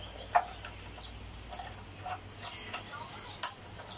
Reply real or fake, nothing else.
real